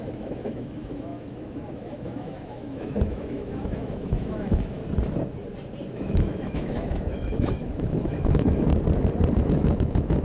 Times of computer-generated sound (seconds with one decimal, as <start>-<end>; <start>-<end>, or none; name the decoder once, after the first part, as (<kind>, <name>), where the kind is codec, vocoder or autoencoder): 0.0-4.8 (autoencoder, DAC-VAE); 5.9-8.7; 9.4-10.2